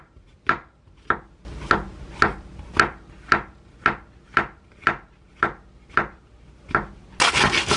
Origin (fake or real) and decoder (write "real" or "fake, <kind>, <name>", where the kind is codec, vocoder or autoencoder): real